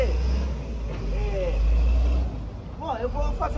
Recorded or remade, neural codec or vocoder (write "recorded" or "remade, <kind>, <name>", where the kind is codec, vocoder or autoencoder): recorded